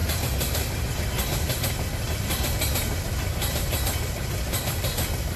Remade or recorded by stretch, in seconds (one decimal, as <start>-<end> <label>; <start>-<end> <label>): 0.0-5.4 recorded